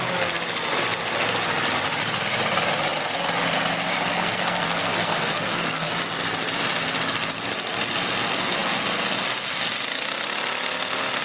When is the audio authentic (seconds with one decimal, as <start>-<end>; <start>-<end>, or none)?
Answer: 0.0-3.9; 5.9-11.2